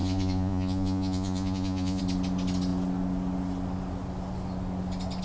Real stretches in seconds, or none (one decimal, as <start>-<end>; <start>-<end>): 2.0-5.2